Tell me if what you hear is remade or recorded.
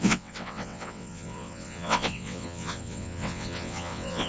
remade